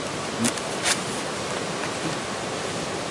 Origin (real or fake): real